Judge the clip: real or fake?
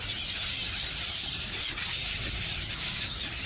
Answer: real